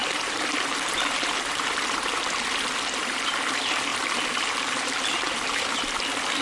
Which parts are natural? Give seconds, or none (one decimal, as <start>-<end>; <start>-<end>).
1.8-3.9; 5.8-6.4